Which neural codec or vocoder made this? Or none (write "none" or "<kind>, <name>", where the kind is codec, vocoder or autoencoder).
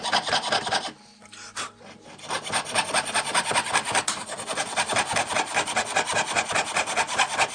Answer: none